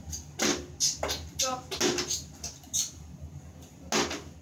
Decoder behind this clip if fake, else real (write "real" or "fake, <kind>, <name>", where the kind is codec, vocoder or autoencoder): real